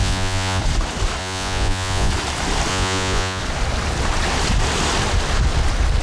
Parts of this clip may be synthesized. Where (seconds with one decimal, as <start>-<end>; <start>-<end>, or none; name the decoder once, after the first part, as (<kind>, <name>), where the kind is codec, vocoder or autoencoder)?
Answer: 0.0-0.6 (vocoder, Vocos); 1.2-2.1; 2.7-3.4